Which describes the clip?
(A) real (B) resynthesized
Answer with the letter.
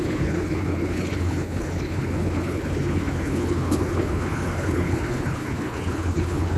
B